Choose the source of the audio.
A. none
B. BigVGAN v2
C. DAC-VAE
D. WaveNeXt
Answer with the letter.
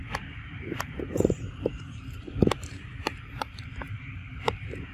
B